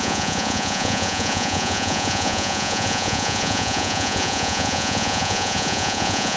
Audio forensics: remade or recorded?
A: remade